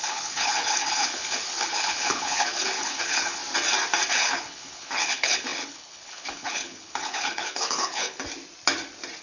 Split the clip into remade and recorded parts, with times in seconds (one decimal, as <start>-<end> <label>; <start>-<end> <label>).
0.0-3.4 remade; 3.4-4.1 recorded; 4.1-8.2 remade; 8.2-9.2 recorded